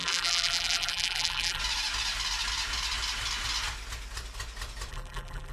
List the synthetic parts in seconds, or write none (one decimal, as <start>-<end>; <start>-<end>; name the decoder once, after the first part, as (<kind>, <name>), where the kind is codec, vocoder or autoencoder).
0.0-1.6 (vocoder, BigVGAN v2); 4.9-5.5